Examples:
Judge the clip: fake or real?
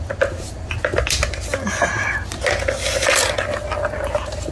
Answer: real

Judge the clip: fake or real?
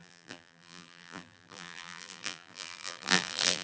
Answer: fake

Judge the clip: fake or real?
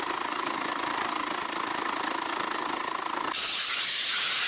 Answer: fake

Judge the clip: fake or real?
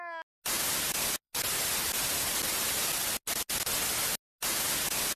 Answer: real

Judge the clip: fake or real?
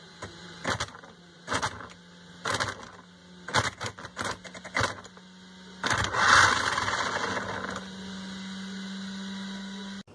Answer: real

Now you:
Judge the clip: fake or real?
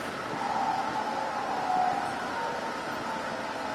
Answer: real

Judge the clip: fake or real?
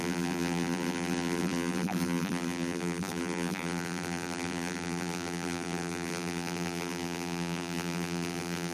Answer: fake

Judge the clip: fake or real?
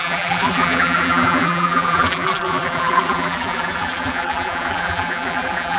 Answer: fake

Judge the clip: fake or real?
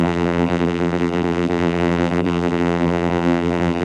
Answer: fake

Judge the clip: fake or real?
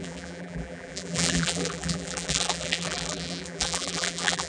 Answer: fake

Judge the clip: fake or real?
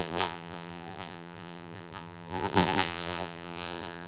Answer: fake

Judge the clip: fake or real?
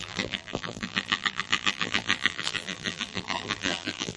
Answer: fake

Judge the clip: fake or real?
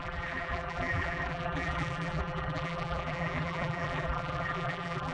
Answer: fake